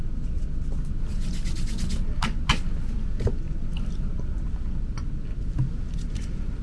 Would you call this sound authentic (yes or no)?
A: yes